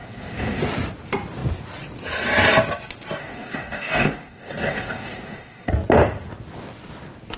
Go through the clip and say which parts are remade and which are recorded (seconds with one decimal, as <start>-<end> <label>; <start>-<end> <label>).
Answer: 0.0-0.6 remade; 0.6-3.2 recorded; 3.2-5.7 remade; 5.7-7.4 recorded